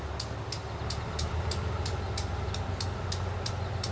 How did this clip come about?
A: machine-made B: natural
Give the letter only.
B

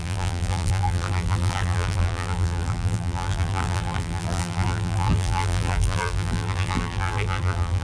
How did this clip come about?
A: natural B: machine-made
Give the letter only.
B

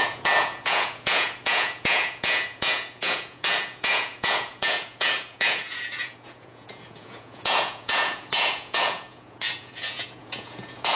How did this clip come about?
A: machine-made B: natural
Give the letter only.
A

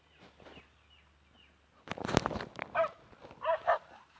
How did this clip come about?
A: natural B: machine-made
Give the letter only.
A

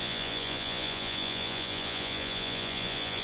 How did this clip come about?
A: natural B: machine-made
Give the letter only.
B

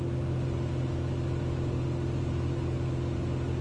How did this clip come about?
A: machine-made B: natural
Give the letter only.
B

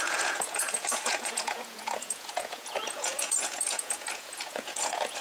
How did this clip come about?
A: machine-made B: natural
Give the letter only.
A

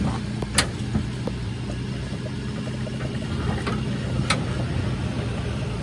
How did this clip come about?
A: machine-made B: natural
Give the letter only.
B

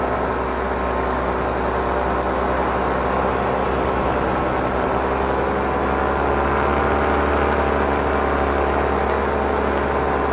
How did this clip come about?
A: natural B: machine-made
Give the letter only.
A